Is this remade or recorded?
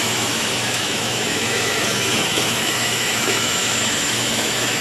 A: remade